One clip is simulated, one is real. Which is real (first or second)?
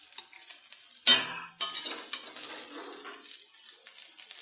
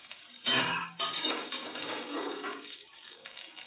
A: first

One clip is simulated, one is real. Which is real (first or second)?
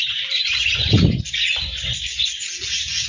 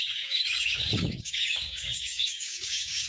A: first